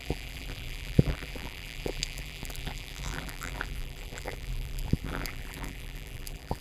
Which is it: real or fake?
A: fake